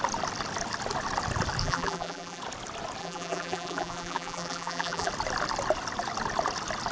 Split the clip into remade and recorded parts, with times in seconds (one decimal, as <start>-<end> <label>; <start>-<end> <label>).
0.0-1.6 recorded; 1.6-2.4 remade; 2.4-3.0 recorded; 3.0-5.1 remade; 5.1-6.9 recorded